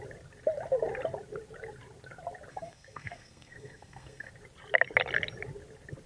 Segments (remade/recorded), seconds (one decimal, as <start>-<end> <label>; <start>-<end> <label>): 0.0-2.5 recorded; 2.5-4.3 remade; 4.3-6.1 recorded